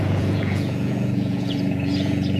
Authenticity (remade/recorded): remade